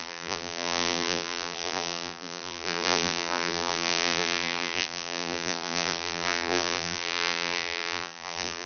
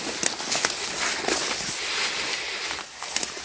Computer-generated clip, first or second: first